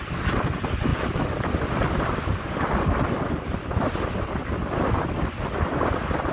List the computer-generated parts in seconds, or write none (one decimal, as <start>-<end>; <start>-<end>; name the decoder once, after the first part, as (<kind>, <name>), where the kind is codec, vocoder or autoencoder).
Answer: none